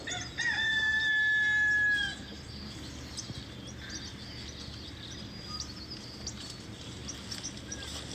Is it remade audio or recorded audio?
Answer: recorded